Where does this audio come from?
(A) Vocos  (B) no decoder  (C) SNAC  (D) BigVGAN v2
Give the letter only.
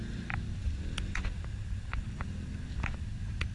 B